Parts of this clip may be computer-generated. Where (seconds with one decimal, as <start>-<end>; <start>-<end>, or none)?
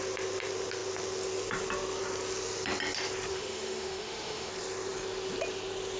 3.3-4.5